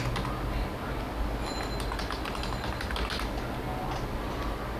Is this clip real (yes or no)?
yes